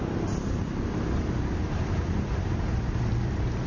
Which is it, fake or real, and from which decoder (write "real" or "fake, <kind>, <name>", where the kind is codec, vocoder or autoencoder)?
real